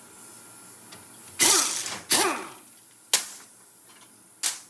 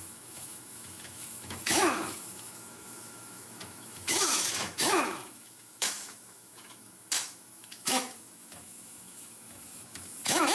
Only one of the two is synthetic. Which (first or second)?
second